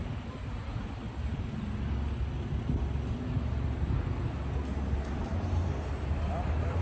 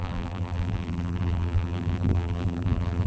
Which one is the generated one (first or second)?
second